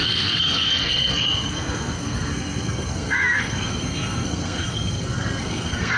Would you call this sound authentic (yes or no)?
no